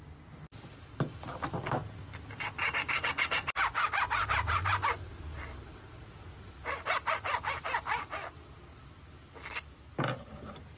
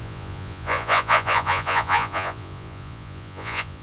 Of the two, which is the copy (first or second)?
second